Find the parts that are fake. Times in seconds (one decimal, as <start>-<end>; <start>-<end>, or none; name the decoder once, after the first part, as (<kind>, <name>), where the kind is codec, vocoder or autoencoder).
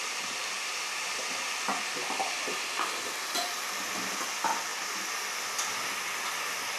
0.4-4.2 (vocoder, BigVGAN v2)